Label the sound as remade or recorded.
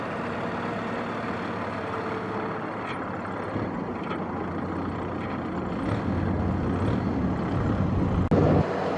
recorded